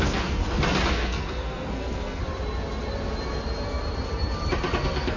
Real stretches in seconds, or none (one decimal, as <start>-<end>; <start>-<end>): 0.4-0.9; 2.2-4.7